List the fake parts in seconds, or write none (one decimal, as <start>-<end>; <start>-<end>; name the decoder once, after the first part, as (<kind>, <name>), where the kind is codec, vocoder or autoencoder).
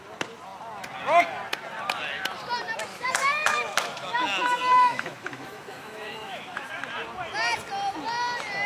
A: 2.9-6.7 (autoencoder, DAC-VAE)